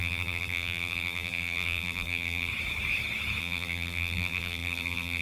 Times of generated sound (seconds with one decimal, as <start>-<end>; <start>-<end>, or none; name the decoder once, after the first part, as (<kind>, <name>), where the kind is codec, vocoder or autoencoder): 0.0-2.5 (vocoder, BigVGAN v2); 3.4-5.2